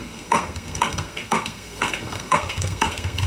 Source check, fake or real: fake